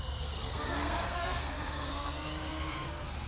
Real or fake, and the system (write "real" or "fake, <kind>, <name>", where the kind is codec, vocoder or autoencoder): fake, codec, SNAC